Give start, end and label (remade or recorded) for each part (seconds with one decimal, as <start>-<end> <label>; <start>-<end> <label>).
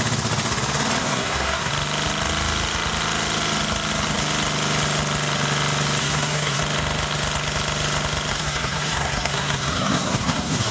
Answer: 0.0-1.0 recorded; 1.0-1.7 remade; 1.7-6.0 recorded; 6.0-6.6 remade; 6.6-8.3 recorded; 8.3-10.7 remade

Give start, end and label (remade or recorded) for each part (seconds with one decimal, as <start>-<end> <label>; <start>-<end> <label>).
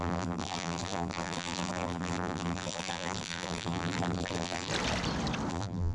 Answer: 0.0-4.7 remade; 4.7-5.5 recorded; 5.5-5.9 remade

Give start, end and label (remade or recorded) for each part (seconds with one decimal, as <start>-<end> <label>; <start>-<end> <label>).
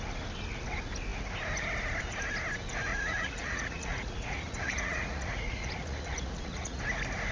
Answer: 0.0-2.9 recorded; 2.9-6.8 remade; 6.8-7.3 recorded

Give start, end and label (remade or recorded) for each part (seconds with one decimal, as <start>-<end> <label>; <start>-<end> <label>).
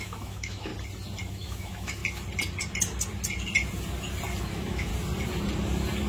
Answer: 0.0-0.7 remade; 0.7-1.3 recorded; 1.3-2.0 remade; 2.0-4.4 recorded; 4.4-4.9 remade; 4.9-6.1 recorded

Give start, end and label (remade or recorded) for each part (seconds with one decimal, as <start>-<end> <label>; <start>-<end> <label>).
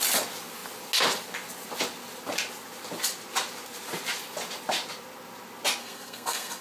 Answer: 0.0-5.8 recorded; 5.8-6.6 remade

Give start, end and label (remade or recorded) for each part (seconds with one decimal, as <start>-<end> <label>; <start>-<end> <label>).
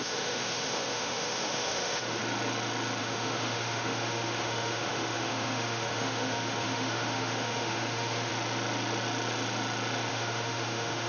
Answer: 0.0-2.2 remade; 2.2-3.0 recorded; 3.0-8.3 remade; 8.3-10.1 recorded; 10.1-11.1 remade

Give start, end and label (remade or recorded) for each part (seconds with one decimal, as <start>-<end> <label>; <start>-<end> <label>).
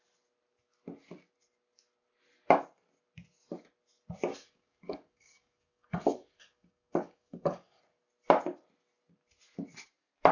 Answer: 0.0-4.3 recorded; 4.3-7.8 remade; 7.8-10.3 recorded